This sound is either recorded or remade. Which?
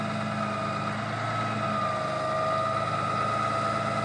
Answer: recorded